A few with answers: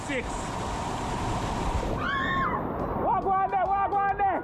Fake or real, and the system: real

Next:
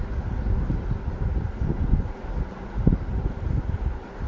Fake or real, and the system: real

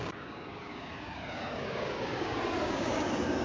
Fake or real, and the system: fake, codec, DAC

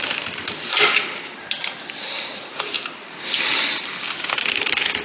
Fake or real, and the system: real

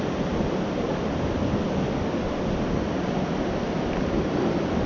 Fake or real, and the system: real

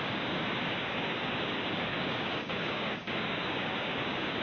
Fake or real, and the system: fake, codec, DAC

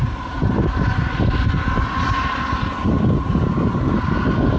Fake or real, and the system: real